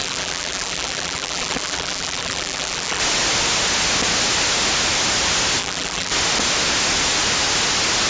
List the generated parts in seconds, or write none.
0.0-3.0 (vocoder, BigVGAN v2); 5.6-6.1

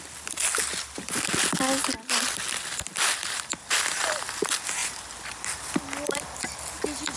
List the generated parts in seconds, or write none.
none

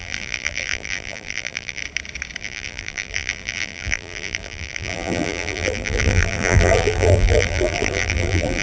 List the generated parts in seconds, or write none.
0.0-1.8 (vocoder, BigVGAN v2); 2.4-8.6